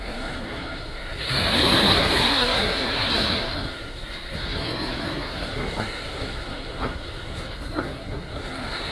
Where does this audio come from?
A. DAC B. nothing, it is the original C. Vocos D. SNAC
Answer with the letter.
D